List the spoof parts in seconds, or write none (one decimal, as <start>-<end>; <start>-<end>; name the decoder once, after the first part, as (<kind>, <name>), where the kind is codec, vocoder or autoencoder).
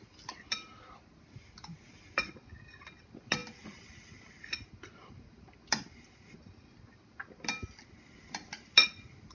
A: none